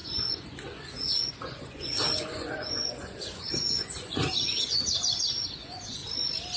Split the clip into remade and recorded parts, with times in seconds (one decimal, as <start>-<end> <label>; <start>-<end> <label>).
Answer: 0.0-6.0 remade; 6.0-6.6 recorded